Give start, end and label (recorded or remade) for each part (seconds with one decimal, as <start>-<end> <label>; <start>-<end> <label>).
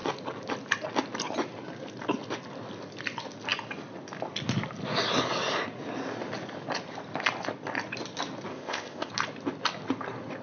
0.0-8.5 recorded; 8.5-9.1 remade; 9.1-10.4 recorded